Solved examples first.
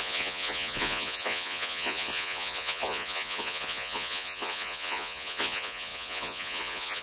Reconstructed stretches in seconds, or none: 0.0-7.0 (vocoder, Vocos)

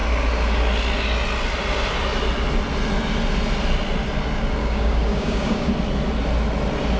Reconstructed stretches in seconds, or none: 4.6-5.7 (codec, DAC)

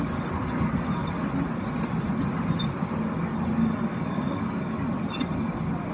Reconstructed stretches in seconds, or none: 3.6-4.7 (codec, DAC)

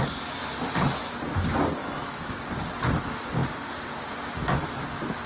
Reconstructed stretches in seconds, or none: 1.8-2.4 (autoencoder, DAC-VAE)

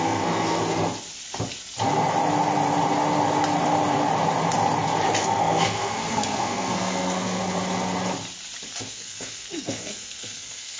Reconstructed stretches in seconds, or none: 0.0-0.6 (codec, SNAC); 5.2-7.4; 8.8-10.8

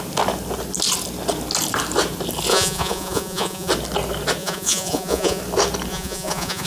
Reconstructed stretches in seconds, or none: 2.5-3.7 (vocoder, Vocos); 4.4-5.4; 5.9-6.7

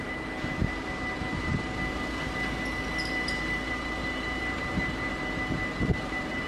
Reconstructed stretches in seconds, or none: 0.0-1.5 (vocoder, BigVGAN v2); 3.7-5.1; 5.8-6.5

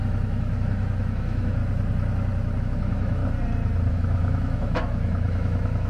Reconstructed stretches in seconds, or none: 0.0-1.6 (autoencoder, DAC-VAE); 2.6-3.2; 3.9-5.9